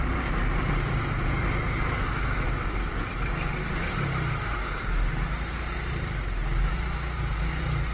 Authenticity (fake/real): real